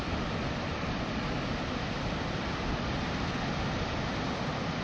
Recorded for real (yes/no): yes